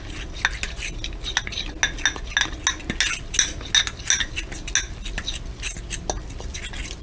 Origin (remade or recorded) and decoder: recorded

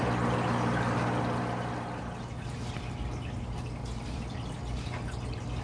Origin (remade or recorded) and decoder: remade, vocoder, BigVGAN v2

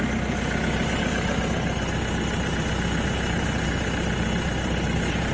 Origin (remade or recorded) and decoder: recorded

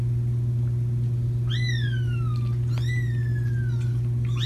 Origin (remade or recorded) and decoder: recorded